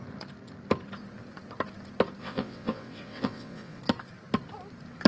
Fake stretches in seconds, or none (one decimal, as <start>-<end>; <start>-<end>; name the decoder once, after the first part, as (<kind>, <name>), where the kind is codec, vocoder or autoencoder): 2.2-3.8 (vocoder, WaveNeXt)